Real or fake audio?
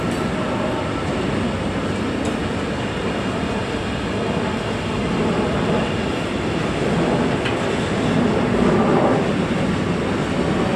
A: real